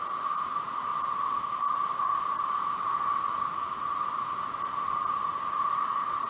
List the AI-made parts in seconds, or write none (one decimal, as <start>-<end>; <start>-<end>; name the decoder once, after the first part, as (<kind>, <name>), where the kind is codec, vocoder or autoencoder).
none